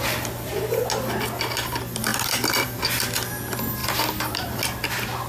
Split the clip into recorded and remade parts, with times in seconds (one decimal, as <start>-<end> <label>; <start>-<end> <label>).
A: 0.0-2.1 recorded; 2.1-2.8 remade; 2.8-3.8 recorded; 3.8-4.6 remade; 4.6-5.3 recorded